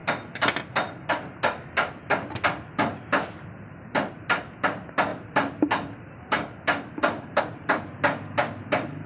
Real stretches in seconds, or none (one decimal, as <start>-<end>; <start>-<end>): 0.0-5.1; 7.4-9.1

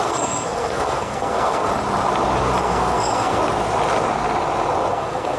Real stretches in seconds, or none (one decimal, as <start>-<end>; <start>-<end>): 1.7-2.6; 3.4-4.9